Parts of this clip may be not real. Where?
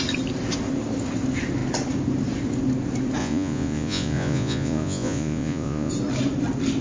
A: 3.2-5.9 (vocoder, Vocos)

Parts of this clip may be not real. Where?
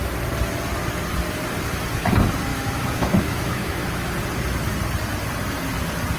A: 2.5-4.1 (autoencoder, DAC-VAE)